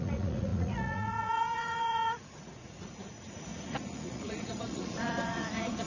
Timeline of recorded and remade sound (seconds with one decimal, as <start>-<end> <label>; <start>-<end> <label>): 0.0-5.9 remade